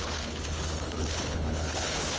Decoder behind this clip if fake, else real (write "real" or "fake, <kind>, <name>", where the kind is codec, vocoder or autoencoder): fake, codec, HILCodec